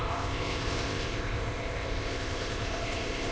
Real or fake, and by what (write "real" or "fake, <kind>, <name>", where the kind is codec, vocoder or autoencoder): fake, codec, ZipCodec